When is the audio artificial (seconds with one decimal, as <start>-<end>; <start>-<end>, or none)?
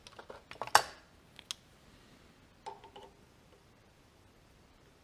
3.0-5.0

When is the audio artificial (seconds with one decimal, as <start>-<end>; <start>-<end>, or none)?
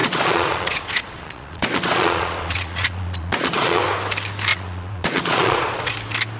0.0-3.8; 4.5-5.9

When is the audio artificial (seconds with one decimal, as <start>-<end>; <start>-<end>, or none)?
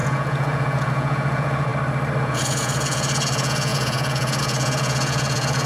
0.0-1.7; 2.2-5.7